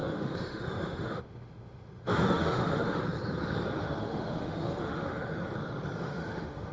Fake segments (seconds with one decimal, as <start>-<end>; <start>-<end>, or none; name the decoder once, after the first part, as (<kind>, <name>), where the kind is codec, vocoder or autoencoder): 0.0-3.0 (autoencoder, DAC-VAE); 3.8-5.3; 6.0-6.7